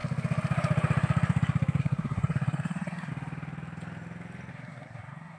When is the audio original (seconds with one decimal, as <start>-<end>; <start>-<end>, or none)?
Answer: 0.0-1.8; 3.1-4.5